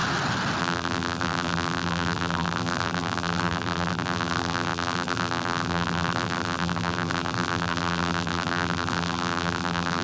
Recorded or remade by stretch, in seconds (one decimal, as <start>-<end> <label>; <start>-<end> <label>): 0.0-0.6 recorded; 0.6-10.0 remade